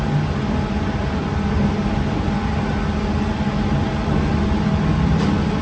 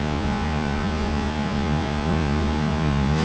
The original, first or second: first